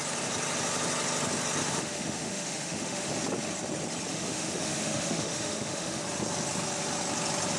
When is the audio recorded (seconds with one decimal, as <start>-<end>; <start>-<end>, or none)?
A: 0.0-1.6; 3.1-4.1; 6.0-7.6